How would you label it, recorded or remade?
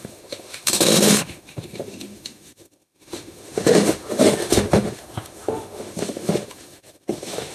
remade